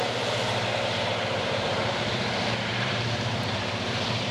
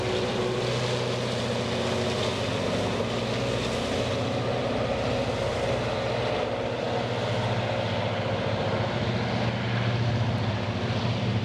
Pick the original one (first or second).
second